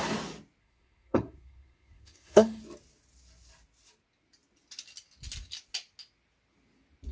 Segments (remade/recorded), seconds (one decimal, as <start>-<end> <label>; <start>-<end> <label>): 0.0-0.6 recorded; 0.6-2.6 remade; 2.6-7.1 recorded